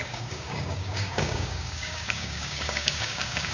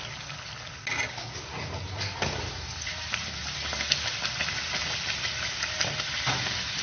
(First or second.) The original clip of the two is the second